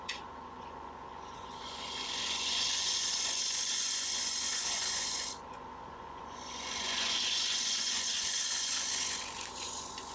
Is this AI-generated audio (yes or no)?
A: yes